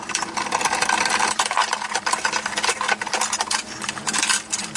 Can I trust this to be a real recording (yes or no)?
yes